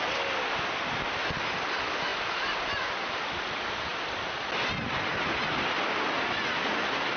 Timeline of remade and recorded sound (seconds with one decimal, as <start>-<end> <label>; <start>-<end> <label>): 0.0-7.2 recorded

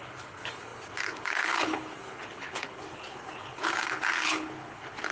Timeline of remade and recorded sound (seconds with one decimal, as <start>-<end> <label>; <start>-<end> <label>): 0.0-5.1 remade